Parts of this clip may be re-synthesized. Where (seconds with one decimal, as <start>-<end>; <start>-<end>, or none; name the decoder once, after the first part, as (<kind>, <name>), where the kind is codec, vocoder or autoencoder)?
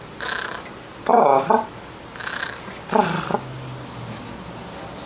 none